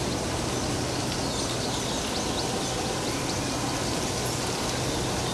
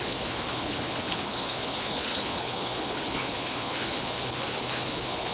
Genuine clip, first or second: first